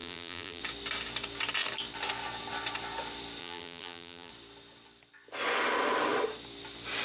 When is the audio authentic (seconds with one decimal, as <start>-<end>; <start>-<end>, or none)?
0.6-3.4; 4.3-7.0